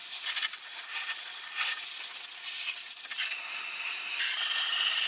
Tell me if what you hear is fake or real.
real